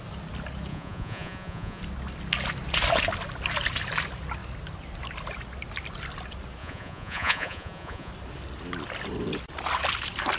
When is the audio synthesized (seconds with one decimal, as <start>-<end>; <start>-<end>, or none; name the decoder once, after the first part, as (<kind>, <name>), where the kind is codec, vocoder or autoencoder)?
0.7-1.8 (vocoder, Vocos); 6.6-8.1